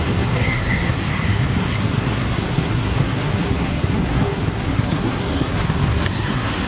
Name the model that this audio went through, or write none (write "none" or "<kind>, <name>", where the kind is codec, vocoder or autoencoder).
codec, SNAC